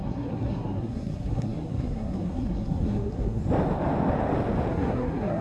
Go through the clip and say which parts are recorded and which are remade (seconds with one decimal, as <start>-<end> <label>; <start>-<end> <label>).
0.0-3.4 remade; 3.4-4.7 recorded; 4.7-5.4 remade